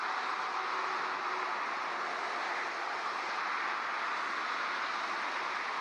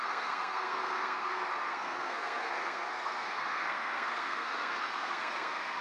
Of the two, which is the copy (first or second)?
second